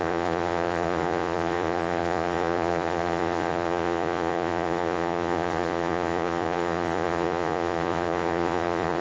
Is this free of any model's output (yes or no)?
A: no